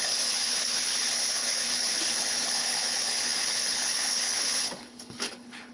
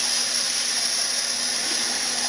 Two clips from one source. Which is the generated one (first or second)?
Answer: first